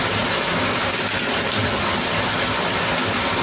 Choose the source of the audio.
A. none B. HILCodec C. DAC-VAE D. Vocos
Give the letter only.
A